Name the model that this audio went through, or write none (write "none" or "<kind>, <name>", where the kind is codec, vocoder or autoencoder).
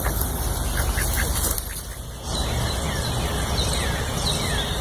vocoder, BigVGAN v2